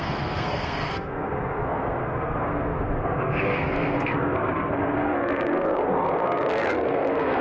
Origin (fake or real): fake